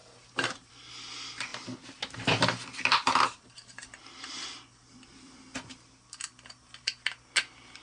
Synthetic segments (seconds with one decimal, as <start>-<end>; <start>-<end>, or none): none